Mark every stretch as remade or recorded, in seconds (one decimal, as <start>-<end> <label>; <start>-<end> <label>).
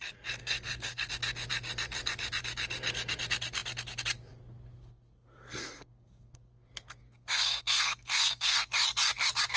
0.0-0.4 recorded; 0.4-1.1 remade; 1.1-4.7 recorded; 4.7-8.7 remade; 8.7-9.6 recorded